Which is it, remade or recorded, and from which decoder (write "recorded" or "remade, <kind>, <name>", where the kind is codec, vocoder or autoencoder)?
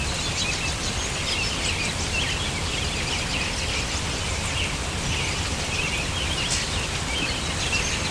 recorded